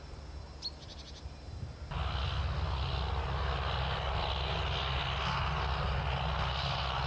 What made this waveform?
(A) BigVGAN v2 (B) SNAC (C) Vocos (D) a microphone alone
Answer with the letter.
D